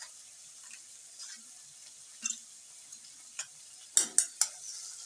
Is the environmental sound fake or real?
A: real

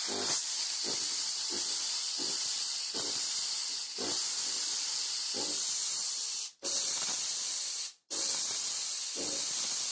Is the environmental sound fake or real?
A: fake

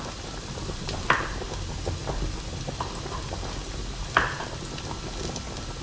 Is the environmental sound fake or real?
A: real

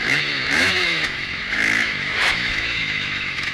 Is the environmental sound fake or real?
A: fake